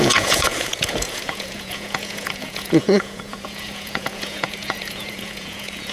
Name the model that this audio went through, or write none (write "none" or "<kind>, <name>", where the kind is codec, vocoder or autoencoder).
vocoder, Vocos